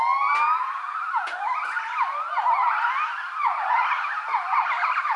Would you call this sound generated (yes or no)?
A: no